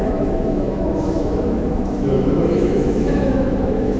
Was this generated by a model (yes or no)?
yes